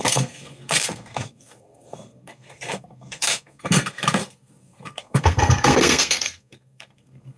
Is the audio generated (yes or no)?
yes